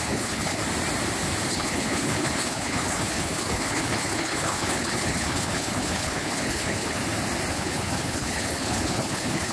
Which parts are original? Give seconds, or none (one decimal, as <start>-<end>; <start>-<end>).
0.6-1.5; 7.0-7.5